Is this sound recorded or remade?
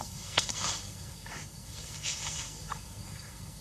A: remade